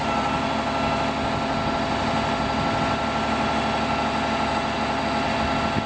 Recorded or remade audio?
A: recorded